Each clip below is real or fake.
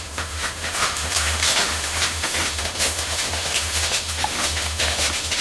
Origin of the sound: fake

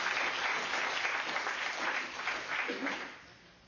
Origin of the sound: real